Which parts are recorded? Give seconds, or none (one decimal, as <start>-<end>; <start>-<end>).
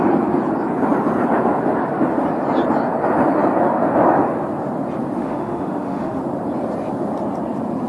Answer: 0.0-5.2; 6.2-7.9